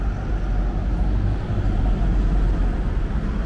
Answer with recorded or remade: recorded